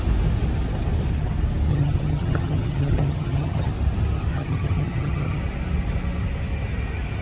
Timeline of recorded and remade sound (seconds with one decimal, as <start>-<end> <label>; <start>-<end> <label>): 0.0-1.7 recorded; 1.7-3.7 remade; 3.7-4.3 recorded; 4.3-5.4 remade; 5.4-7.2 recorded